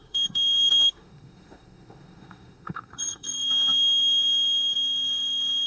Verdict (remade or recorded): remade